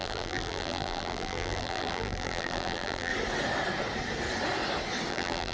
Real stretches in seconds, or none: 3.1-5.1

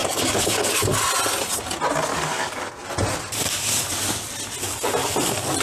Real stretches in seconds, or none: 0.9-2.1; 2.7-5.6

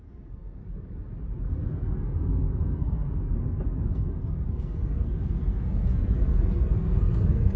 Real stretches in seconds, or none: 0.6-1.5

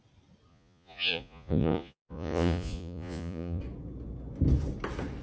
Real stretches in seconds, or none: 0.0-0.5; 3.6-5.2

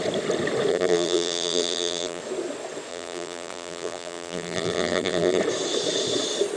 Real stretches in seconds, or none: 0.0-0.7; 2.2-2.9; 5.4-6.6

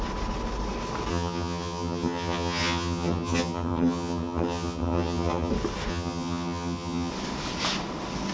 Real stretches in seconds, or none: 0.0-1.1; 5.5-5.9; 7.1-8.3

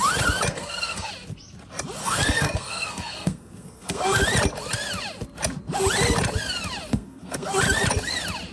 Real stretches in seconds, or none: 0.0-0.5; 1.1-2.0; 4.2-6.9; 7.6-8.5